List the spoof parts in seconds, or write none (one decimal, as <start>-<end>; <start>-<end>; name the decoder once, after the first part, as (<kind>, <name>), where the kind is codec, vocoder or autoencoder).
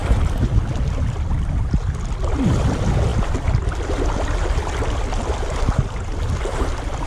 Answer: none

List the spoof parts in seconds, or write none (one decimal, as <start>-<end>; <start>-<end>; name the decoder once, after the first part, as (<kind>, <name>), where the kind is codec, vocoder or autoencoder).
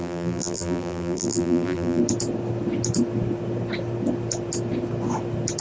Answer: 0.0-2.0 (vocoder, BigVGAN v2)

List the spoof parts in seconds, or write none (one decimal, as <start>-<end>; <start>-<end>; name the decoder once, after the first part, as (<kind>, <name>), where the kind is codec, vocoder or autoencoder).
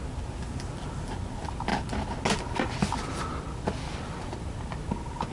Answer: none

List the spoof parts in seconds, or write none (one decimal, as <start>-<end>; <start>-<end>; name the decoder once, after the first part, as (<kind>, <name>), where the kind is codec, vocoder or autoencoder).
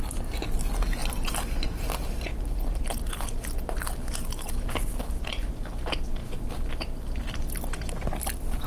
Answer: none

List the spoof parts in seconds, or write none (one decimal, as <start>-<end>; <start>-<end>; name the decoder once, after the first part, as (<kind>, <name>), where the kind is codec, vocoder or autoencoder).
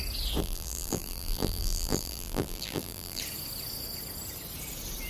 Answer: 0.4-3.2 (vocoder, BigVGAN v2)